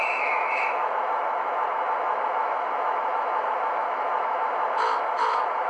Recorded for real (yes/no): no